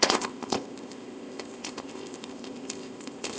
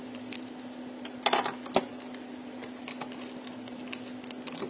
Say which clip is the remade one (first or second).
first